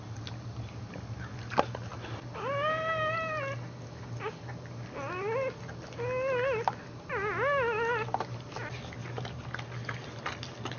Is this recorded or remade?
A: recorded